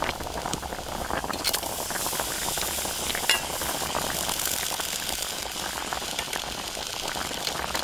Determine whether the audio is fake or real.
real